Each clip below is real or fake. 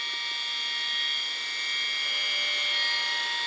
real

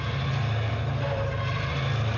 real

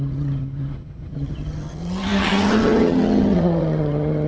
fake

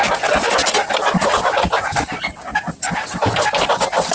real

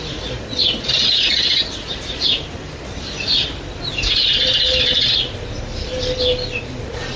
real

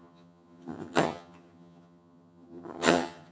fake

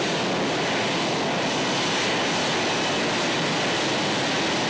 real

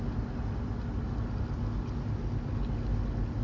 real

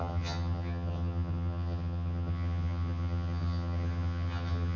fake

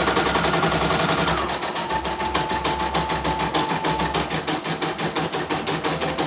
real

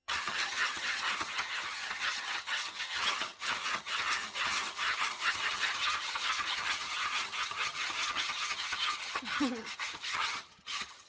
fake